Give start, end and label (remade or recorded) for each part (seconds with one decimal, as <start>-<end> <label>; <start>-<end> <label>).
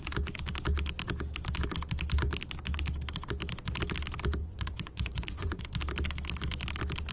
0.0-4.4 recorded; 4.4-5.6 remade; 5.6-7.1 recorded